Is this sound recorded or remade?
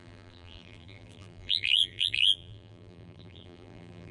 remade